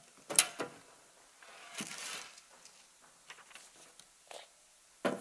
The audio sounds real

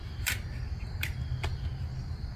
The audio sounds real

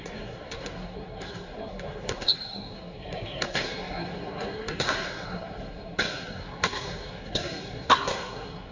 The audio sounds fake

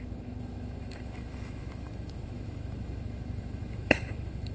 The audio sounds fake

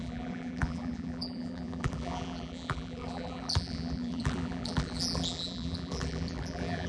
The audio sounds fake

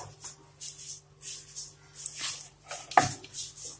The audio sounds real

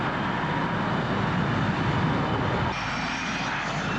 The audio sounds real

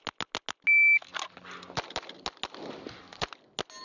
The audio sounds real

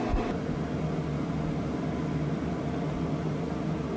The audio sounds real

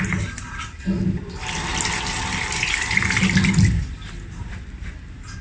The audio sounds real